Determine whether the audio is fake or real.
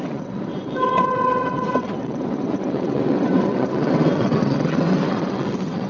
fake